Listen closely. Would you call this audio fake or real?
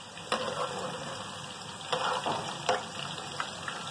real